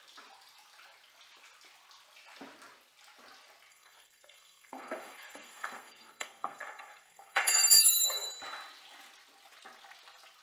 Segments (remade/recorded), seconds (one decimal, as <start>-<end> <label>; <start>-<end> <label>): 0.0-3.7 recorded; 3.7-8.3 remade; 8.3-10.4 recorded